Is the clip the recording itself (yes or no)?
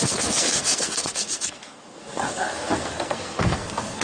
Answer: no